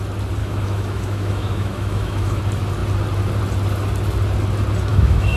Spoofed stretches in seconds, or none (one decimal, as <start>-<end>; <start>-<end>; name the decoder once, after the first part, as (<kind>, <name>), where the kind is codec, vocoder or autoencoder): 0.4-2.4 (autoencoder, DAC-VAE); 4.9-5.4